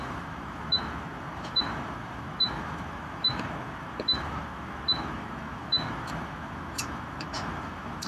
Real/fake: fake